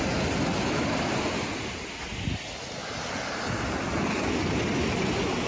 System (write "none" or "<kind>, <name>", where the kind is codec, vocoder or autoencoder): none